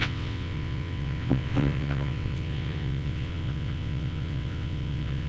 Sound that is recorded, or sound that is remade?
remade